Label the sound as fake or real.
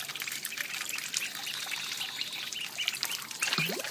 real